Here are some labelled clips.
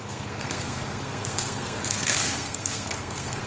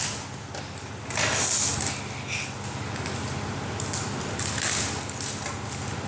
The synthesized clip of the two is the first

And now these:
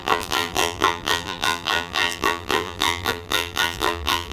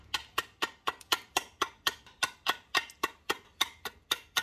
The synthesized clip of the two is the first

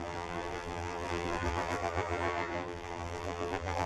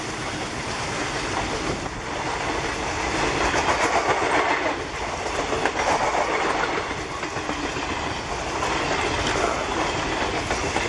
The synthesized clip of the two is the first